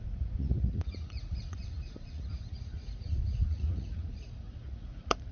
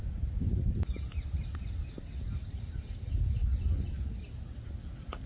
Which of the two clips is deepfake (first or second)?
first